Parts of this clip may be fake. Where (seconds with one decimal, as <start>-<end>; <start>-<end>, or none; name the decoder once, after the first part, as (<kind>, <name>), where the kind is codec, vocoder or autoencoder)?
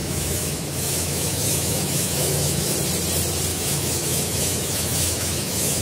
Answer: 0.0-2.7 (autoencoder, DAC-VAE); 3.5-5.8